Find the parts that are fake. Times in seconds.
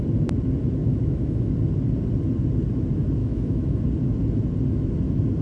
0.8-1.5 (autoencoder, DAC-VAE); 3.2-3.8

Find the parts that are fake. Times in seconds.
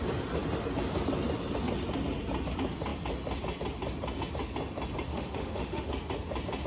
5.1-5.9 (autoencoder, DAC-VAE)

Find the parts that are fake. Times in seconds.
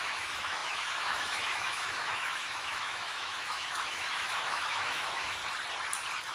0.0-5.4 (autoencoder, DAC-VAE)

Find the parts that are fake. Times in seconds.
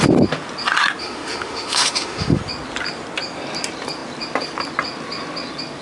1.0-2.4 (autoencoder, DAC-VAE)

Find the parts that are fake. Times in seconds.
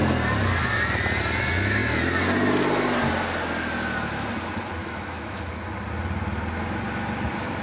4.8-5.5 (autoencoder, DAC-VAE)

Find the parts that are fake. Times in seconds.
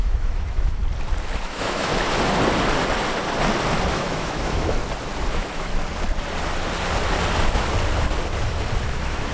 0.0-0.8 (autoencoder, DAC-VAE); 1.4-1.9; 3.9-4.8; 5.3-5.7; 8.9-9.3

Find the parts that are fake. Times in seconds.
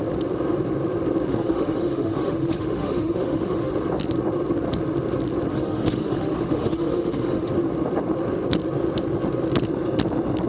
1.3-3.7 (autoencoder, DAC-VAE); 5.5-7.5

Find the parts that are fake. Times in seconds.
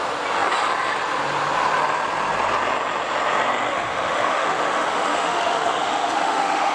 3.7-6.7 (autoencoder, DAC-VAE)